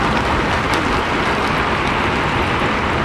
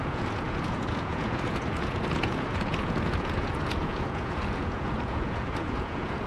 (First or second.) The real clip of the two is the first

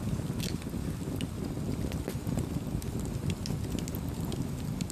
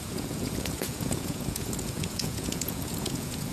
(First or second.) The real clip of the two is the first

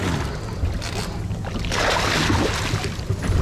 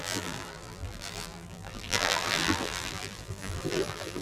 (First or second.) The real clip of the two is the first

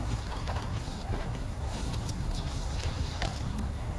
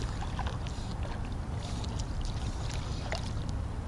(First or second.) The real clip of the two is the second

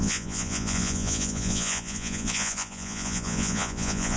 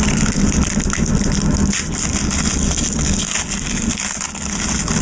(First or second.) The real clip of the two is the second